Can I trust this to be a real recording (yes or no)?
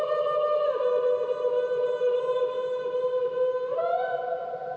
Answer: yes